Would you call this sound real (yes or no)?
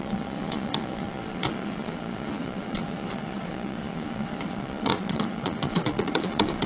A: no